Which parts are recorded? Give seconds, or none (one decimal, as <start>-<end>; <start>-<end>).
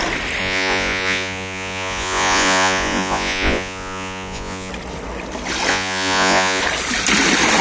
0.0-0.4; 4.7-5.7; 6.6-7.6